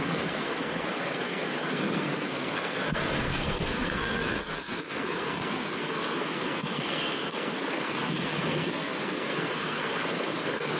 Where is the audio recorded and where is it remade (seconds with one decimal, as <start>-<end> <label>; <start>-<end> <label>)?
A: 0.0-10.8 remade